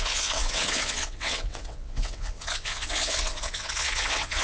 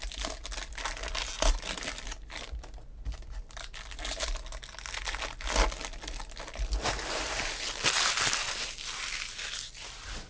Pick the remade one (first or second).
first